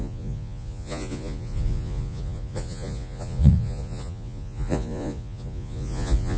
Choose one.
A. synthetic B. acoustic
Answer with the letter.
A